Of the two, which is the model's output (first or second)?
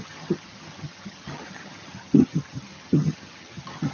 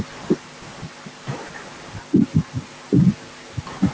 first